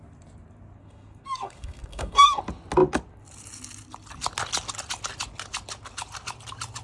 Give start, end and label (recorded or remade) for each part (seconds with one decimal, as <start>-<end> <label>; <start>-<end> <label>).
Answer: 0.0-0.8 recorded; 0.8-2.4 remade; 2.4-6.8 recorded

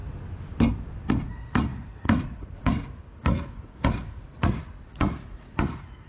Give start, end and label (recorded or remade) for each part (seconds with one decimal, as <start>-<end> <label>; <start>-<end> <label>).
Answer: 0.0-1.1 recorded; 1.1-6.1 remade